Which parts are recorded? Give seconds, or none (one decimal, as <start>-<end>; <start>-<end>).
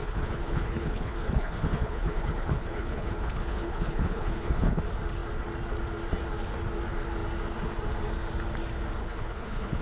4.8-9.0